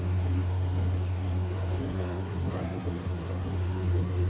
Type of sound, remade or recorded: remade